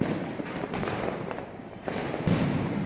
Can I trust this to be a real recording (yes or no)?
no